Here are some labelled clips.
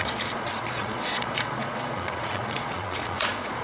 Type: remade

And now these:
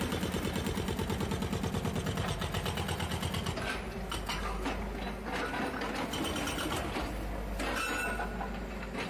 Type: recorded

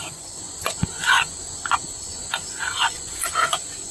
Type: remade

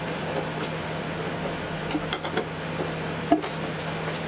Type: recorded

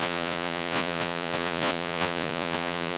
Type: remade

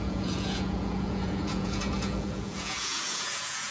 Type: remade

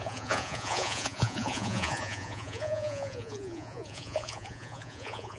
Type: remade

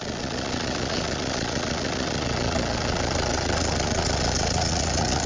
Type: remade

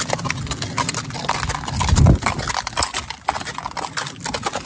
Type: recorded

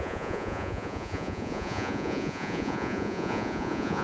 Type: remade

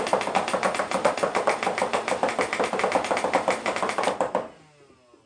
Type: recorded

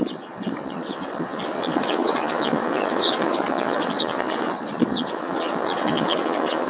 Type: remade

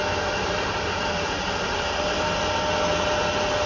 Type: recorded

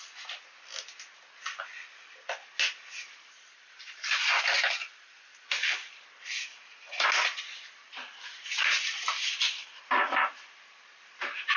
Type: recorded